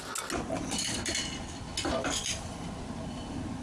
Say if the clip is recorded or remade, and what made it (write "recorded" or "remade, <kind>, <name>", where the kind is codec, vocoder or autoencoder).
recorded